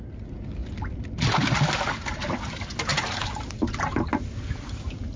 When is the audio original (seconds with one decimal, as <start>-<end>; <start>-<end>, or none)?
0.0-5.2